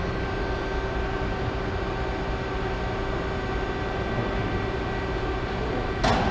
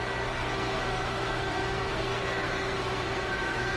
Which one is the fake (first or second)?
second